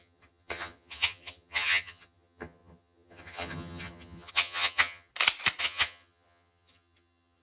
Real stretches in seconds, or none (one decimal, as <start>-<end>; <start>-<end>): 5.1-5.6